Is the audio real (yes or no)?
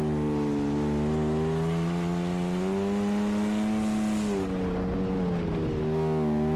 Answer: yes